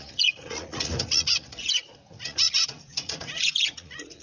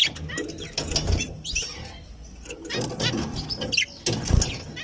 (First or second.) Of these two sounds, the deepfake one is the first